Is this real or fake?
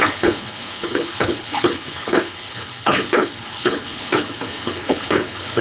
fake